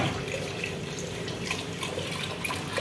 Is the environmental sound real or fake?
real